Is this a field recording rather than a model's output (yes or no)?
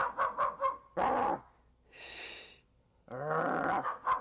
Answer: yes